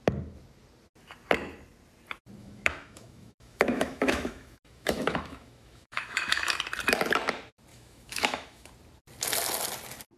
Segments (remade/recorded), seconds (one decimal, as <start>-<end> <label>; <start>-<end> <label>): 0.0-2.4 recorded; 2.4-6.6 remade; 6.6-7.7 recorded; 7.7-8.7 remade; 8.7-10.2 recorded